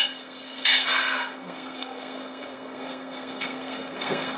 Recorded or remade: remade